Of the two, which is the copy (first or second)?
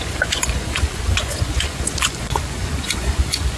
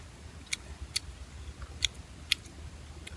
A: first